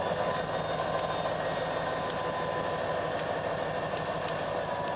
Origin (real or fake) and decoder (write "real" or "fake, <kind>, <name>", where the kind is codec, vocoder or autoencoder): real